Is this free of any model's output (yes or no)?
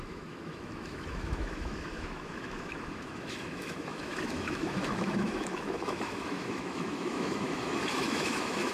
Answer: no